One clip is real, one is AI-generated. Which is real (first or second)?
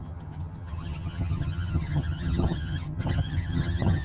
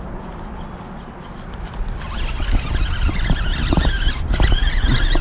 second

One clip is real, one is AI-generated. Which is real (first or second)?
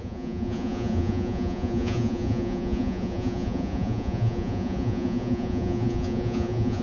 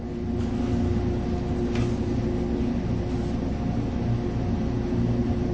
second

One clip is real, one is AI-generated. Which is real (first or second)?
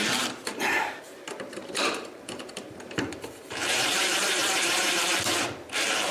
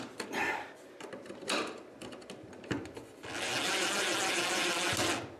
second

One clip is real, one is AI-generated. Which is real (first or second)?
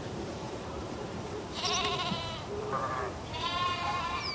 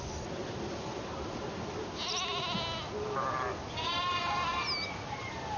second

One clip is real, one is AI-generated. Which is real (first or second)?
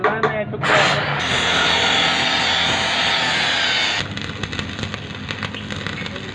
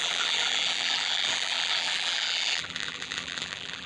first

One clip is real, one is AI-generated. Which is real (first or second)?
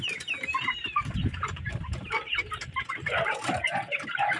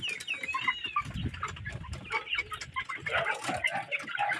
second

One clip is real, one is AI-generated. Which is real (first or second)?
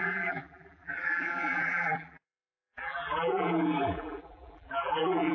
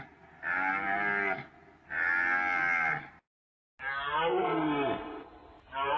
second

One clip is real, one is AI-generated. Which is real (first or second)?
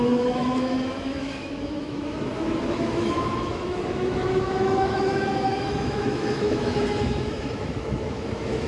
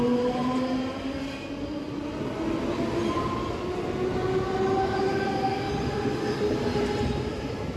second